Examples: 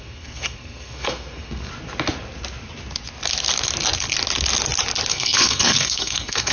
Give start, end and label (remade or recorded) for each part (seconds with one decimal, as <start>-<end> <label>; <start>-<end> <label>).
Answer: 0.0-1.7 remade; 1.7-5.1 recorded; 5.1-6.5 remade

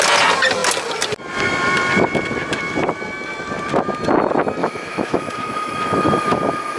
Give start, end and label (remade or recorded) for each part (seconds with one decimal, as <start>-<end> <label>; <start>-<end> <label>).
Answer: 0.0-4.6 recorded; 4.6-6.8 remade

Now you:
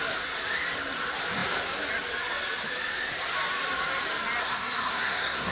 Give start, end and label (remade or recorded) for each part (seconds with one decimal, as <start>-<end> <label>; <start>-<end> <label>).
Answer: 0.0-4.4 recorded; 4.4-5.5 remade

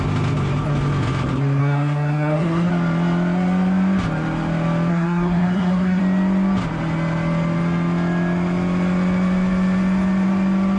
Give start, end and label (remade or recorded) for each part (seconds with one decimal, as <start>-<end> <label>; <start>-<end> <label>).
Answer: 0.0-1.6 recorded; 1.6-2.7 remade; 2.7-4.9 recorded; 4.9-6.0 remade; 6.0-10.8 recorded

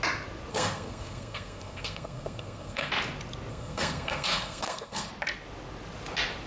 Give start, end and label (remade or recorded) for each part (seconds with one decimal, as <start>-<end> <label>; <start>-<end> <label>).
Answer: 0.0-0.5 recorded; 0.5-2.9 remade; 2.9-3.5 recorded; 3.5-5.1 remade; 5.1-6.5 recorded